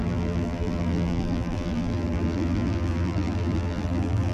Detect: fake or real fake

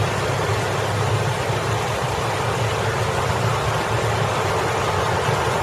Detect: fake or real real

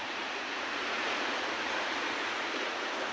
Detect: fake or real fake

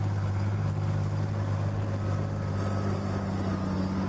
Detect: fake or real real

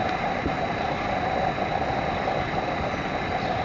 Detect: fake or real real